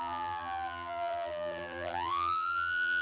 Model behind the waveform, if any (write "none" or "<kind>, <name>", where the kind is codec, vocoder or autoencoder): vocoder, BigVGAN v2